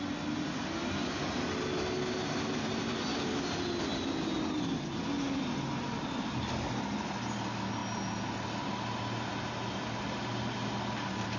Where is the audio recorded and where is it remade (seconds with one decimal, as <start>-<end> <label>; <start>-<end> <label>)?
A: 0.0-11.4 recorded